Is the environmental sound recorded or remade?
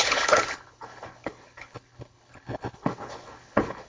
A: remade